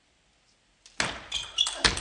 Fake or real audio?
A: real